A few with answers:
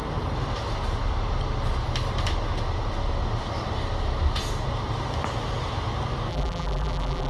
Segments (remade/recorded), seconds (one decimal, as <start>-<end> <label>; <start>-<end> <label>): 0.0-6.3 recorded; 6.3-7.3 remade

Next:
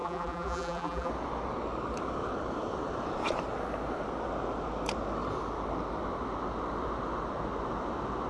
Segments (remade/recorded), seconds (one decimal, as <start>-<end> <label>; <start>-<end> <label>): 0.0-1.1 remade; 1.1-8.3 recorded

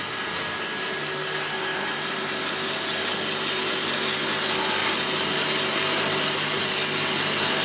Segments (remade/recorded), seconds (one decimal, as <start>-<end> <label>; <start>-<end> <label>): 0.0-7.6 recorded

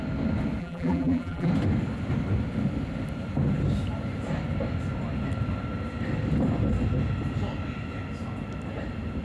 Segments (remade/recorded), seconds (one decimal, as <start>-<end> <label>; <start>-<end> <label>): 0.0-0.6 recorded; 0.6-1.5 remade; 1.5-9.2 recorded

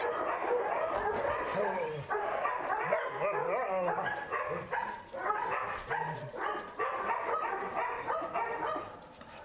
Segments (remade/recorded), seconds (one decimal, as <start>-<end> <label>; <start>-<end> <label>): 0.0-1.5 remade; 1.5-4.7 recorded; 4.7-9.4 remade